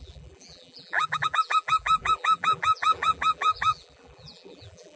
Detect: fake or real fake